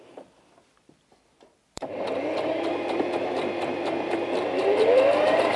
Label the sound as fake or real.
fake